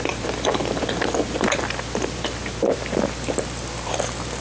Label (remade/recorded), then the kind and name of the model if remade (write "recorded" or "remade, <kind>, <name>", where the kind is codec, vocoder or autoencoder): remade, vocoder, BigVGAN v2